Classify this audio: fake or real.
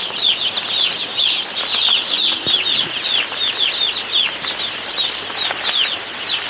real